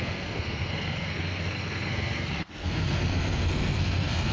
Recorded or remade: remade